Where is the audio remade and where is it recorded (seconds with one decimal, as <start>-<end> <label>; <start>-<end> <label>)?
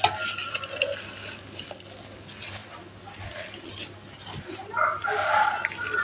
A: 0.0-6.0 recorded